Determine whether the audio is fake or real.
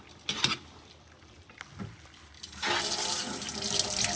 real